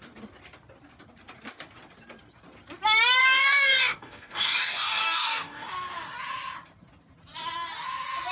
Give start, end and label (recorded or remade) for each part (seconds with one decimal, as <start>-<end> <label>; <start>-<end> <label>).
0.0-3.2 recorded; 3.2-5.7 remade; 5.7-8.3 recorded